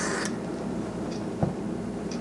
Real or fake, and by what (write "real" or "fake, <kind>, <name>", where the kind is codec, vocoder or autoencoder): fake, vocoder, BigVGAN v2